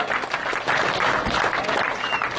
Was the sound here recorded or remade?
recorded